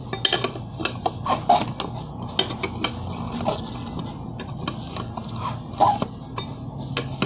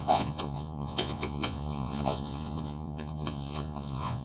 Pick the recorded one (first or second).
first